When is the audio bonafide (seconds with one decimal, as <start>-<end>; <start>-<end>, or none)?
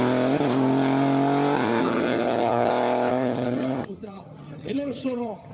0.0-1.8; 2.7-3.1